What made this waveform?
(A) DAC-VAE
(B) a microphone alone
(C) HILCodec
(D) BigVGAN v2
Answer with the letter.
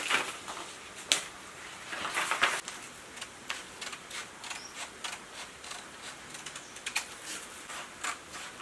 B